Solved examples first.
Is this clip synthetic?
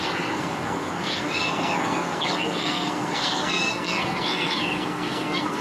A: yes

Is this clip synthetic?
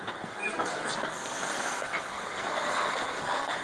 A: yes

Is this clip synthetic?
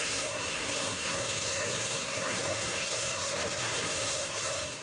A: yes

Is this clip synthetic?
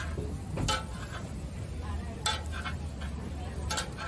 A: no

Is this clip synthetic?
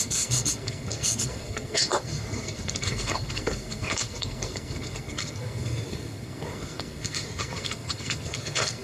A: yes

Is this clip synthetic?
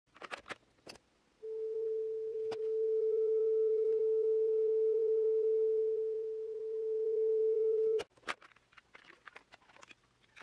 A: no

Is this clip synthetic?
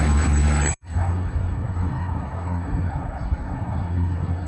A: yes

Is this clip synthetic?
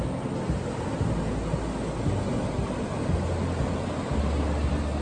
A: no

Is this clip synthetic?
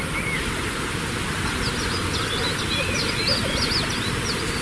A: no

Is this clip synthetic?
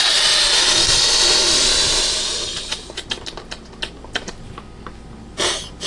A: no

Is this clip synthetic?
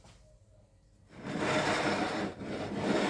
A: no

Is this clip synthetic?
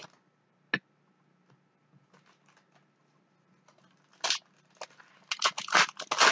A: no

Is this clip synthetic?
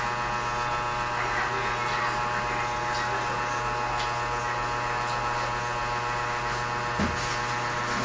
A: no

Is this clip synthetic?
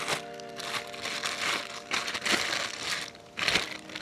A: no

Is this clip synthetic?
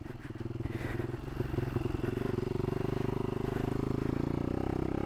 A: no